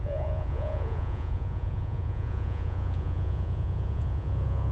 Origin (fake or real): fake